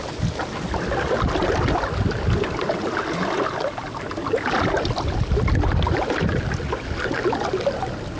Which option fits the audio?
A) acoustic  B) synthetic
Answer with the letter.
A